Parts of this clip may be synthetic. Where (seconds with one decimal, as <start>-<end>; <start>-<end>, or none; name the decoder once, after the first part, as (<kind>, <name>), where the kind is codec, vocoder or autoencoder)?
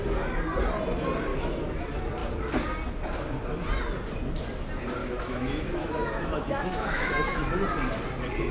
1.3-1.8 (autoencoder, DAC-VAE); 5.0-7.5